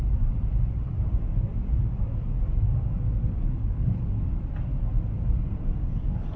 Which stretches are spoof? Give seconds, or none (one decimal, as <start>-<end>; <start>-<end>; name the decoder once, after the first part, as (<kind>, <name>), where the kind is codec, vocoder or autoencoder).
3.2-4.0 (codec, HILCodec)